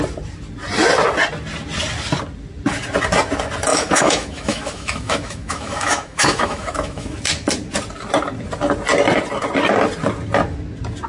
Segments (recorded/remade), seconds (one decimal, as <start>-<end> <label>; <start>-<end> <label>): 0.0-3.7 recorded; 3.7-7.2 remade; 7.2-11.1 recorded